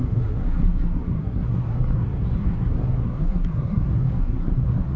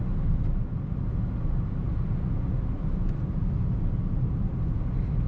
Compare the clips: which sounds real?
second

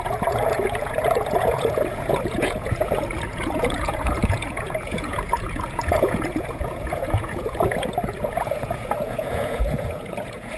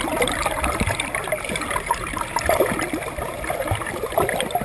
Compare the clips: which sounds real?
second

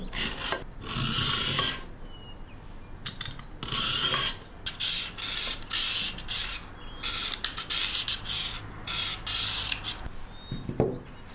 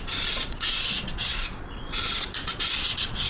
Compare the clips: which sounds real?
first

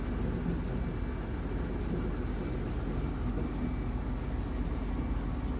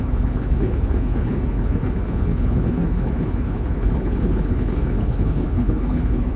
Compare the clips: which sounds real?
first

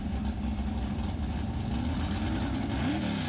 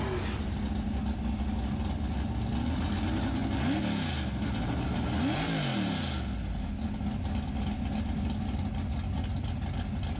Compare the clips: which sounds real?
second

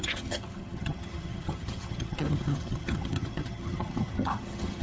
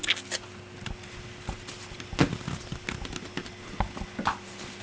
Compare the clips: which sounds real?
second